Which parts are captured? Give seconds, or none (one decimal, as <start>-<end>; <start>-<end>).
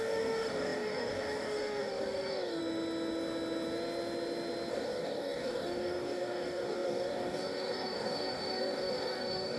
2.6-4.7